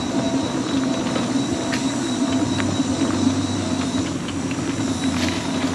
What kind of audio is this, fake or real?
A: real